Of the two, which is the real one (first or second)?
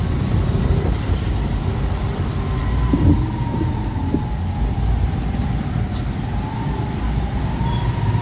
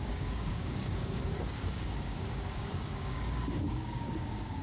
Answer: first